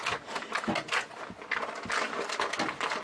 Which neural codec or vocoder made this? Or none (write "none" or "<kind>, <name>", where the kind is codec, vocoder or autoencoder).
none